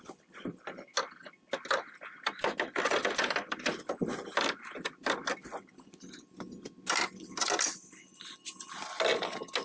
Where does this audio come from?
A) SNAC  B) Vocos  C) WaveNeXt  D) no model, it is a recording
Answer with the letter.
D